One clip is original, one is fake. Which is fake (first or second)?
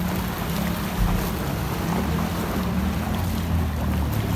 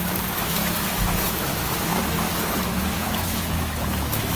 second